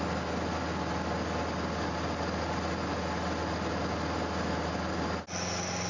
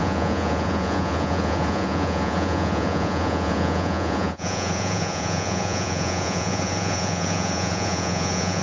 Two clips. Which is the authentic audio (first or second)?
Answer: first